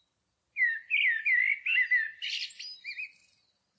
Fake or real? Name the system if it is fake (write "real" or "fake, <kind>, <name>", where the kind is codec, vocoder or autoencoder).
real